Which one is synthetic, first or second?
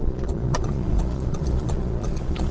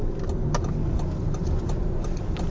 first